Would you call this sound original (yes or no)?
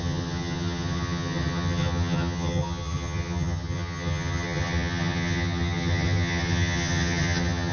no